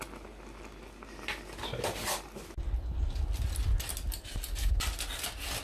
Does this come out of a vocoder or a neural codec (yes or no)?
no